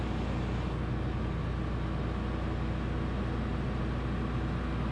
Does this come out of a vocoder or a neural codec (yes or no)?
no